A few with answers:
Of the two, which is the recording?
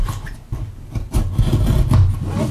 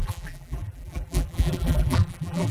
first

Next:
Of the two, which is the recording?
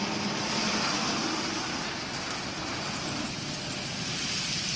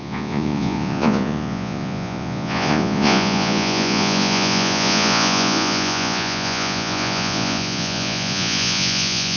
first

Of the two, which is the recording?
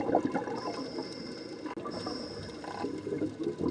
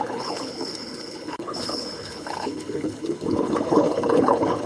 first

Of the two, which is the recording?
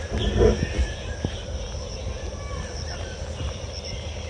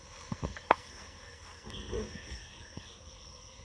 first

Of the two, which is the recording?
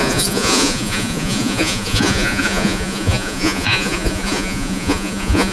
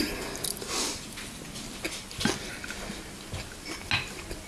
second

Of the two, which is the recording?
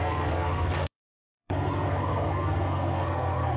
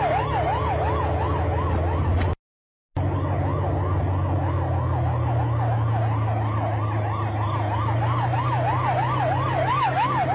second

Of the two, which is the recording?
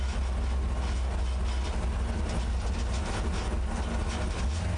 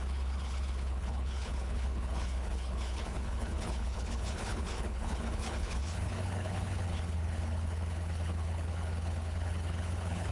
first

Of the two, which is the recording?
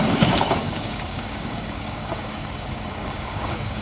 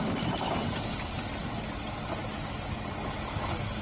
second